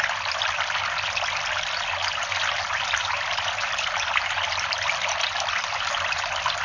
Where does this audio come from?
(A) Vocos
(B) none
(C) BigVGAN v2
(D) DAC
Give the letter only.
B